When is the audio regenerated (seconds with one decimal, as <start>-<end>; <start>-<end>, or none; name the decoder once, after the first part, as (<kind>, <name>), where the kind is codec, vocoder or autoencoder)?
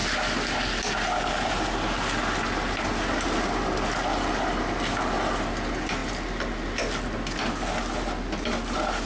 none